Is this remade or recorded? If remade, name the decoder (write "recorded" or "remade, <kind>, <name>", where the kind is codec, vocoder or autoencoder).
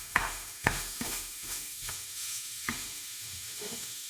remade, autoencoder, DAC-VAE